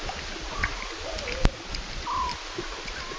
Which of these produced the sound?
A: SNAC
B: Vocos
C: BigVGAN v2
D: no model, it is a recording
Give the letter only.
D